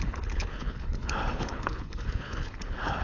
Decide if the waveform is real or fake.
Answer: fake